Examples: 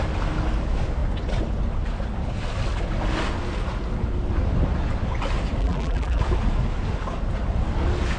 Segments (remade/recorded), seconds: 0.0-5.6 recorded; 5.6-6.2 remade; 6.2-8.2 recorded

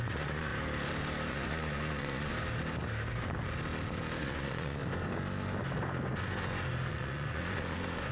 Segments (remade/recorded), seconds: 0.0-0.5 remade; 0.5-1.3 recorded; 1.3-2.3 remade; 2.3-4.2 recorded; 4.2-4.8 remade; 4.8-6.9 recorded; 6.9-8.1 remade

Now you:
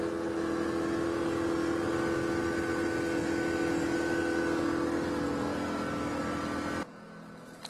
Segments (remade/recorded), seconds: 0.0-7.7 recorded